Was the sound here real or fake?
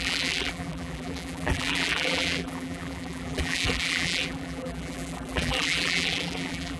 fake